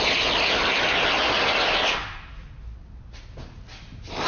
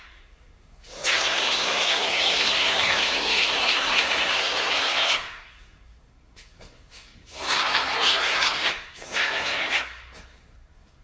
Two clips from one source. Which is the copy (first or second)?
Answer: second